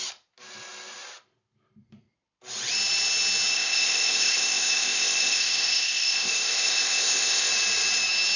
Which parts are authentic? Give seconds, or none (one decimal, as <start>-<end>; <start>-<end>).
0.0-3.5; 7.5-8.4